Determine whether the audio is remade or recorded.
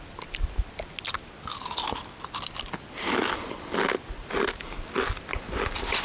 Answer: recorded